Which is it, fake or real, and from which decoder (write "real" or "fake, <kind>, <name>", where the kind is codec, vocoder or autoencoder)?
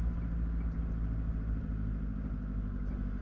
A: real